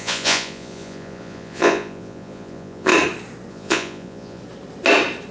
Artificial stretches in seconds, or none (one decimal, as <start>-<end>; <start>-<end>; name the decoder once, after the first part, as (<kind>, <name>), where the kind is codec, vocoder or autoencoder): 0.0-2.9 (vocoder, Vocos); 3.5-4.4